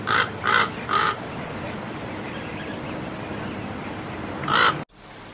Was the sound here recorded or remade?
recorded